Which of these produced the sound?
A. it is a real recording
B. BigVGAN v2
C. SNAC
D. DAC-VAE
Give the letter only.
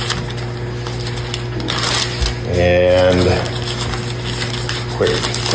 A